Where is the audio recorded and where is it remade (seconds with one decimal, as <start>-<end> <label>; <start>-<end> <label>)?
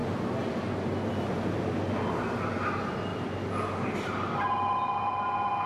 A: 0.0-5.7 recorded